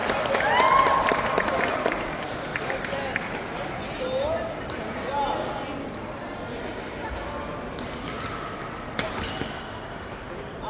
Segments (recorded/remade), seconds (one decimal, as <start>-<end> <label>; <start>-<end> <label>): 0.0-10.7 recorded